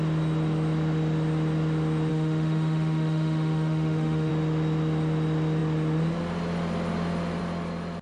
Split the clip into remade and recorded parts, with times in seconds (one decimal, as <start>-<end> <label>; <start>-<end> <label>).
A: 0.0-2.1 recorded; 2.1-4.3 remade; 4.3-8.0 recorded